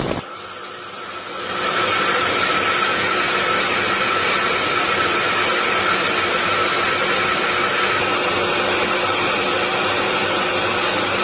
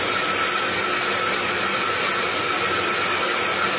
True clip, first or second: second